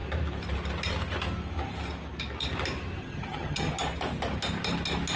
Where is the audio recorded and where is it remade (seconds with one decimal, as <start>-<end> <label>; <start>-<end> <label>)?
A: 0.0-3.0 recorded; 3.0-3.7 remade; 3.7-5.2 recorded